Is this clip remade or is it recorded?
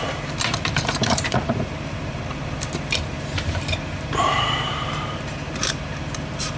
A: remade